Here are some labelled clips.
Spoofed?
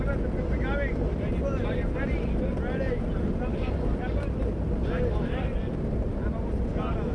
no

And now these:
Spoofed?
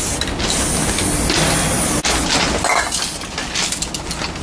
no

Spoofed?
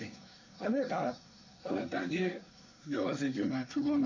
yes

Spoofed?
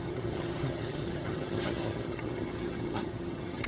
yes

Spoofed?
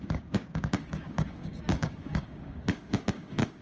yes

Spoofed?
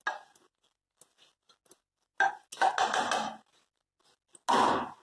no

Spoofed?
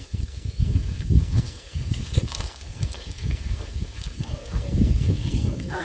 yes